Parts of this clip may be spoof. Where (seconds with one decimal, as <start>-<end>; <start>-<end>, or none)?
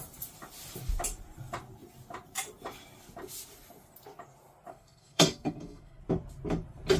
4.7-6.0